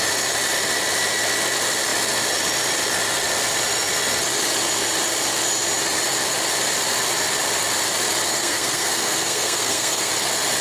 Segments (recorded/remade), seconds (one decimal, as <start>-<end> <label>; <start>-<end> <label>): 0.0-8.3 recorded; 8.3-10.1 remade; 10.1-10.6 recorded